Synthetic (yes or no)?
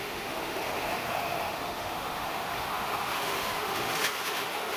yes